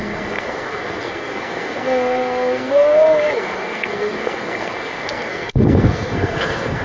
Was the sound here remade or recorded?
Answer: remade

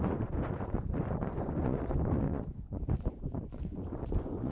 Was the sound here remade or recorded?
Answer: remade